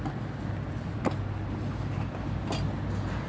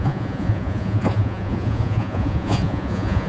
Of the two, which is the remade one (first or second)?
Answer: second